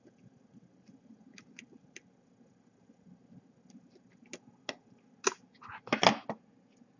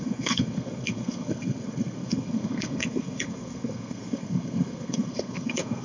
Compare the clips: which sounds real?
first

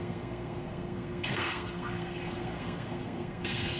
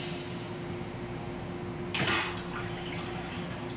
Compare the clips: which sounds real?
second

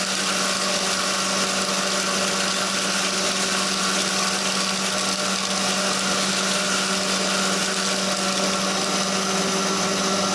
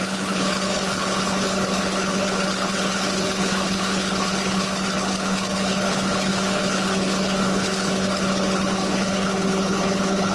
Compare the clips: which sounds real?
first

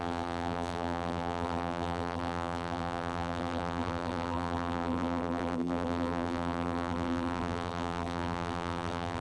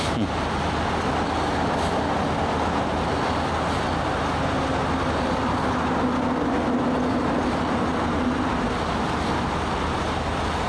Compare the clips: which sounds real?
second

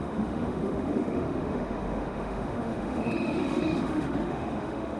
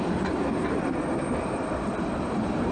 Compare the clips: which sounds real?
second